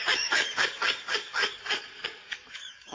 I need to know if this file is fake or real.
fake